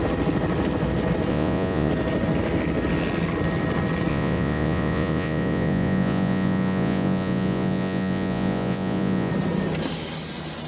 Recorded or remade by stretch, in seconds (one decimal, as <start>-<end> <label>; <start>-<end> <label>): 0.0-1.3 recorded; 1.3-1.9 remade; 1.9-4.1 recorded; 4.1-9.3 remade; 9.3-10.7 recorded